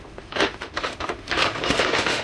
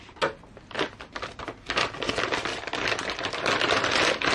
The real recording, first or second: second